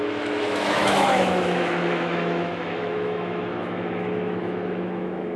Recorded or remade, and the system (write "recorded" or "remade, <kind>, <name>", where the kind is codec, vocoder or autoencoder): remade, autoencoder, DAC-VAE